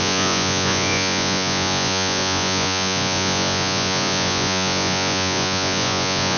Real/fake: fake